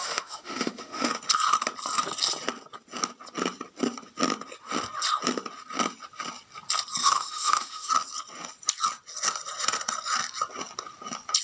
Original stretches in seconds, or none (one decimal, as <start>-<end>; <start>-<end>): 1.1-7.0; 7.9-11.4